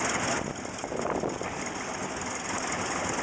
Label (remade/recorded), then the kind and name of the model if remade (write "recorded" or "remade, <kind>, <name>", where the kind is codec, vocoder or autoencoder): recorded